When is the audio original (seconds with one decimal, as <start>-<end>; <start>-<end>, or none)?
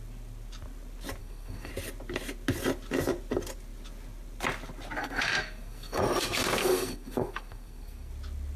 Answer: 0.0-1.2; 1.7-5.0; 6.0-6.6; 8.1-8.6